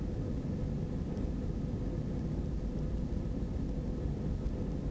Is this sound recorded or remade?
recorded